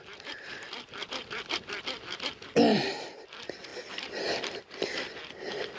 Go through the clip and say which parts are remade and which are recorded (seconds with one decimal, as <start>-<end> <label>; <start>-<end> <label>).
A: 0.0-3.7 remade; 3.7-4.4 recorded; 4.4-5.8 remade